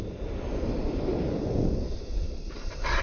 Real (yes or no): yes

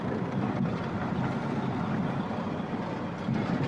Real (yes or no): yes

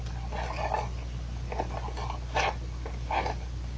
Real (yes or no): yes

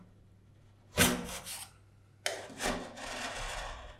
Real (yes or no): yes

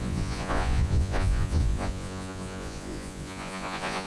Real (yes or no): no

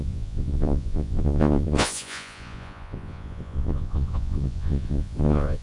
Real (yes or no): no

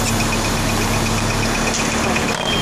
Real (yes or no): yes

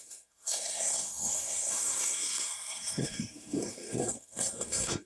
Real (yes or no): no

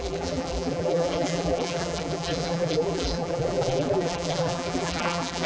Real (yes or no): no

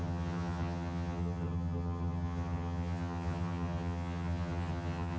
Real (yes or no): no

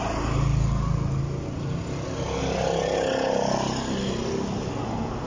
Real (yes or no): yes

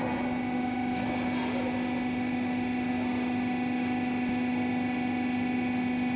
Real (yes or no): yes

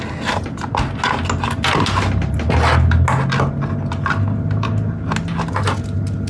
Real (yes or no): yes